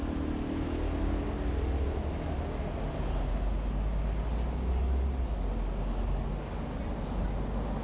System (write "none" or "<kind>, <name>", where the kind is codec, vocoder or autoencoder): none